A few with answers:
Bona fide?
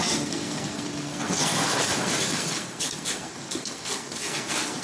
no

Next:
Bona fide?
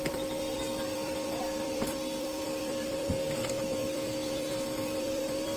no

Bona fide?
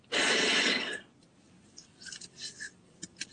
yes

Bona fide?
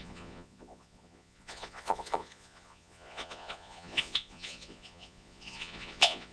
no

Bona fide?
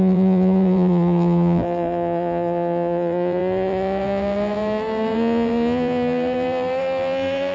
no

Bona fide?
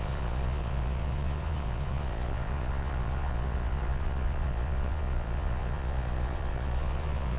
no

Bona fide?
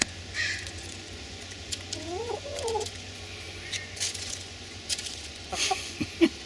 no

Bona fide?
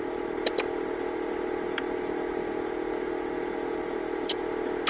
yes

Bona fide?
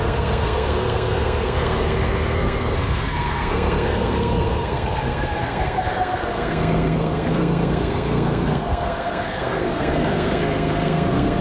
no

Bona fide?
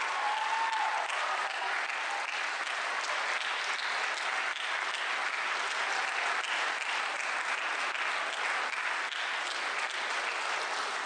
yes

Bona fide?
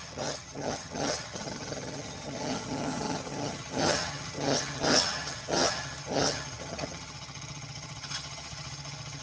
no